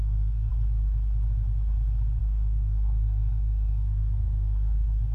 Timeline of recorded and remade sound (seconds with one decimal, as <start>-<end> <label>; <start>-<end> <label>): 0.0-0.5 remade; 0.5-2.2 recorded; 2.2-5.1 remade